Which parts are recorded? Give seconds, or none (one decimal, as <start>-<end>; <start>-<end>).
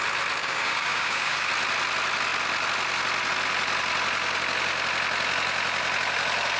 0.0-0.4; 1.5-6.6